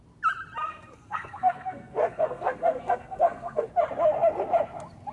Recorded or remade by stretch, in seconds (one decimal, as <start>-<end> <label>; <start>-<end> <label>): 0.0-0.6 recorded; 0.6-3.7 remade; 3.7-5.1 recorded